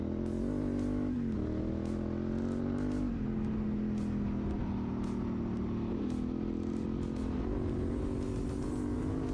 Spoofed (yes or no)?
no